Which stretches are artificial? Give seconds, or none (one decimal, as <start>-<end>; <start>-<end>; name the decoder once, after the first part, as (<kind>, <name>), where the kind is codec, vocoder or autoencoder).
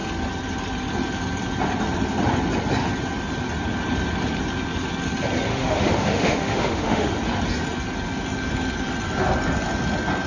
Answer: 5.5-7.1 (autoencoder, DAC-VAE)